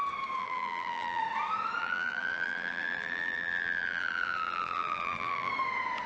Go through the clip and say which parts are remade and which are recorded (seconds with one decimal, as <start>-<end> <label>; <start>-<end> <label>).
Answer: 0.0-0.4 recorded; 0.4-1.2 remade; 1.2-1.8 recorded; 1.8-5.5 remade; 5.5-6.1 recorded